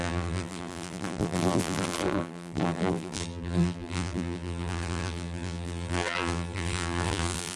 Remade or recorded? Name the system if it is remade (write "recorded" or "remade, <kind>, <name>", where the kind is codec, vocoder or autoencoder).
remade, vocoder, BigVGAN v2